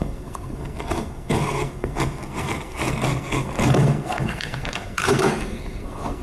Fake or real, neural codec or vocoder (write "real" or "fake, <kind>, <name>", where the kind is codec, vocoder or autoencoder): fake, codec, SNAC